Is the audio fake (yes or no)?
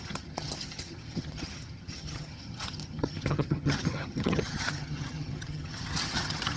yes